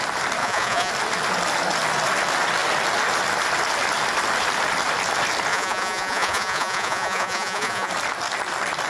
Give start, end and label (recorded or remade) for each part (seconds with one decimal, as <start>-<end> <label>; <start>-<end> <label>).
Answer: 0.0-0.4 recorded; 0.4-0.9 remade; 0.9-5.5 recorded; 5.5-7.9 remade; 7.9-8.9 recorded

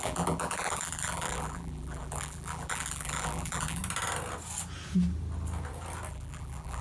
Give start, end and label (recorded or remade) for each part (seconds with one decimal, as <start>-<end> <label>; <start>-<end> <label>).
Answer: 0.0-3.8 remade; 3.8-6.1 recorded; 6.1-6.8 remade

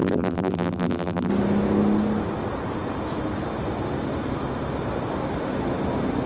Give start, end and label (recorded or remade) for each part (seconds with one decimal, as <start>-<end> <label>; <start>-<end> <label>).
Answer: 0.0-1.3 remade; 1.3-6.3 recorded

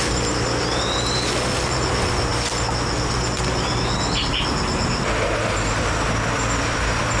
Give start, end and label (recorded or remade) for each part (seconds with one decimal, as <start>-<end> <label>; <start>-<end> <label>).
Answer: 0.0-7.2 recorded